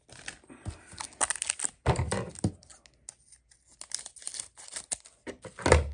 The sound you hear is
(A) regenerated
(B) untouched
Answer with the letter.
B